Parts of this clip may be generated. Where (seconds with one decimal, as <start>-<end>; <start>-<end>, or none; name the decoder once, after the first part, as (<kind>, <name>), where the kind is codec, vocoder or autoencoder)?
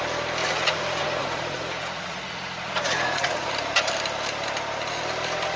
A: 0.4-3.5 (vocoder, Vocos)